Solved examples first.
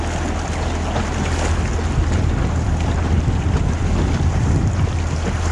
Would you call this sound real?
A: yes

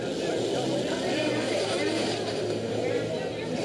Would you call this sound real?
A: yes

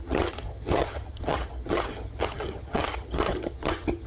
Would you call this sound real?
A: no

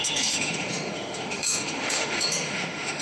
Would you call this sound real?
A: no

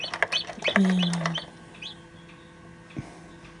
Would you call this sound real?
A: yes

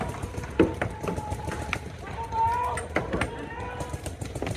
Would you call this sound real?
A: yes